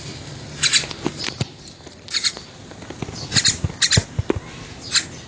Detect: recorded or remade recorded